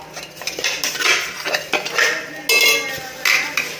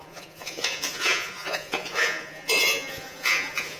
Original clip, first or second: first